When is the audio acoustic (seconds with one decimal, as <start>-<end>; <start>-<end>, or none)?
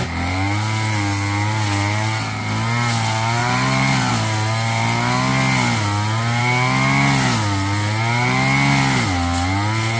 0.0-3.4; 4.1-10.0